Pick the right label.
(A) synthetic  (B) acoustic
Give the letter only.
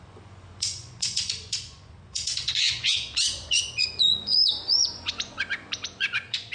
A